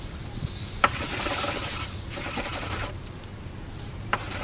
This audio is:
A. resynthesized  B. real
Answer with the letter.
A